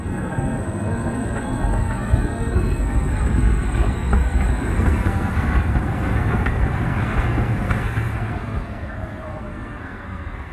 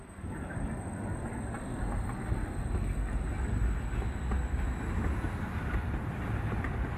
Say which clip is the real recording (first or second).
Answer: second